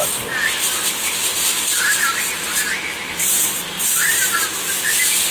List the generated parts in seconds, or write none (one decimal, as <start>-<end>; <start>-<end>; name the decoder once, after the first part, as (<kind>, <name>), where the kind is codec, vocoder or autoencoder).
1.3-4.5 (vocoder, BigVGAN v2)